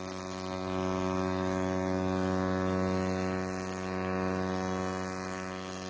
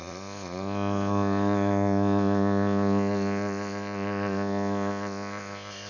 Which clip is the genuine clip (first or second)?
first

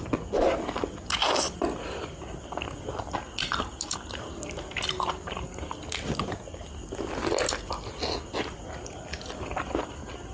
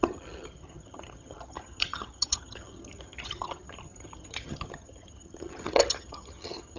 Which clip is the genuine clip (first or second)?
first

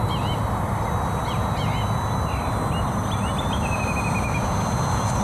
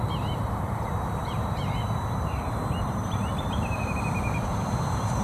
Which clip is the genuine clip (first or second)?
first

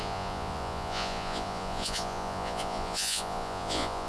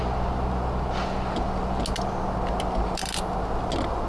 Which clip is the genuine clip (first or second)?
second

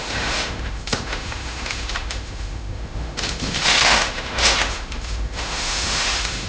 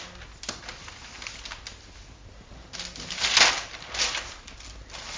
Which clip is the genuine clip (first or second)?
second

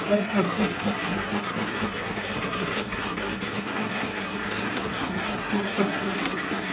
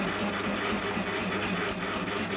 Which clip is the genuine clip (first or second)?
second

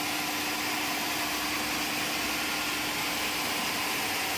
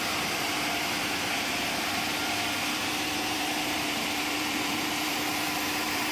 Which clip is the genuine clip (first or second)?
first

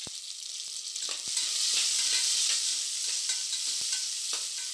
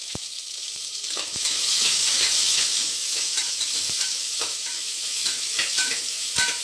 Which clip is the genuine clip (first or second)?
first